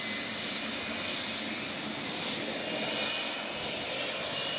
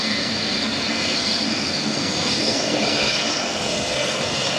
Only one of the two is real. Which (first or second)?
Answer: first